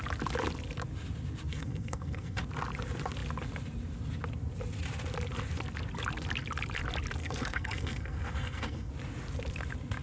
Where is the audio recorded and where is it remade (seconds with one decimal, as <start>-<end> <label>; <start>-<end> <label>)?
0.0-1.5 recorded; 1.5-2.4 remade; 2.4-7.2 recorded; 7.2-8.9 remade; 8.9-10.0 recorded